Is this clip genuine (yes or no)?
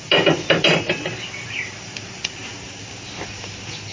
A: yes